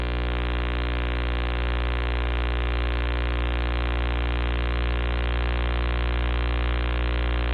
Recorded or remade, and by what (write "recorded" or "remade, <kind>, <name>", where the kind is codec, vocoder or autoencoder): recorded